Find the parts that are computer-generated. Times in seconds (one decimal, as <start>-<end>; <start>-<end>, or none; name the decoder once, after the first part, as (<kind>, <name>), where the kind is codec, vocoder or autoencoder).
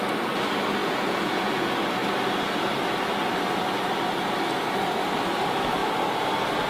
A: 0.8-1.6 (vocoder, Vocos)